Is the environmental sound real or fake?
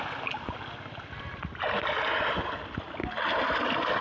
real